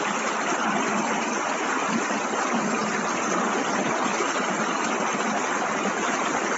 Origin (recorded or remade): recorded